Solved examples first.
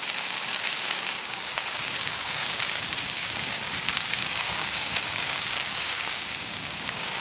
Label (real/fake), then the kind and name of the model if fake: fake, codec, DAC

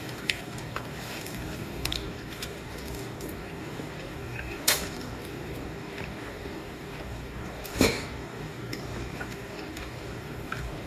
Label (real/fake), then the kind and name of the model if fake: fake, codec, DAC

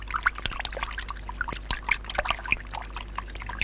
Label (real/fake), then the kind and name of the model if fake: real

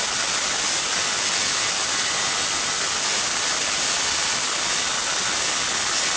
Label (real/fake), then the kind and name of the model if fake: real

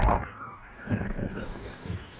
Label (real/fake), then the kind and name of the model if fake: fake, codec, DAC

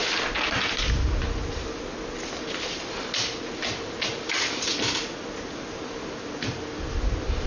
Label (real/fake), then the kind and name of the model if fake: real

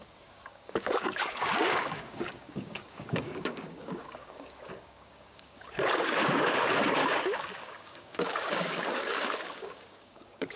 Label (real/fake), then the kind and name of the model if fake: fake, codec, DAC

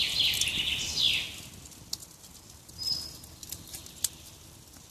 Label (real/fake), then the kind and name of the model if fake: real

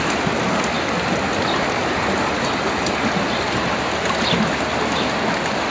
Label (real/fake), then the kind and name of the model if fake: real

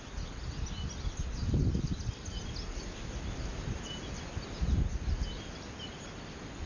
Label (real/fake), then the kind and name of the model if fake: real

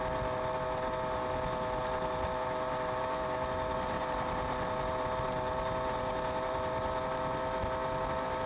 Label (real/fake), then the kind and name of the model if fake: real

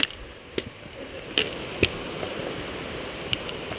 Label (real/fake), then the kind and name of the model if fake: real